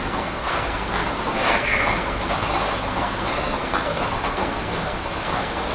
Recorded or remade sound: remade